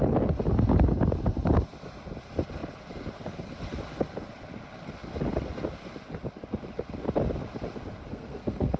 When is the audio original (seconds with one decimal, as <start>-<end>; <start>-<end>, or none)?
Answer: 0.0-8.1